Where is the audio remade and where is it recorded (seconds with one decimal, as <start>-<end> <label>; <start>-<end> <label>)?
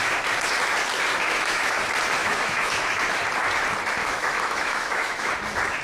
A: 0.0-1.1 recorded; 1.1-1.8 remade; 1.8-2.2 recorded; 2.2-2.9 remade; 2.9-4.0 recorded; 4.0-5.3 remade; 5.3-5.8 recorded